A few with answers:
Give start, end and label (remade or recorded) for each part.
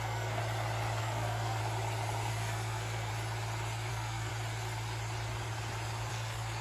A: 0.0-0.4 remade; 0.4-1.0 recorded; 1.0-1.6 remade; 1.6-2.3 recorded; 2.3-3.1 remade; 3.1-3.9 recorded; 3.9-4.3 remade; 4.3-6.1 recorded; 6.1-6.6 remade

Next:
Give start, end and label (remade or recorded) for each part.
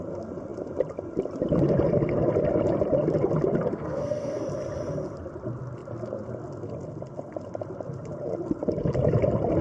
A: 0.0-3.7 recorded; 3.7-4.4 remade; 4.4-9.6 recorded